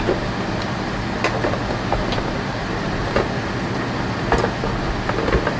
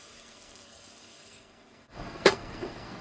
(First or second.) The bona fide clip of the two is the first